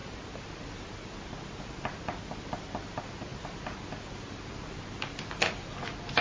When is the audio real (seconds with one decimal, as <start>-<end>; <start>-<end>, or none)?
0.0-6.2